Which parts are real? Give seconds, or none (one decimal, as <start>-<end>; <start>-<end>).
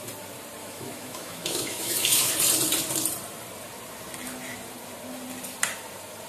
0.0-0.6; 2.3-6.3